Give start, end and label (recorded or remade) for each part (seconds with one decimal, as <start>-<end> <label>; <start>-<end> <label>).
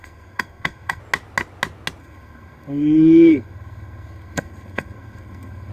0.0-1.0 remade; 1.0-2.0 recorded; 2.0-5.7 remade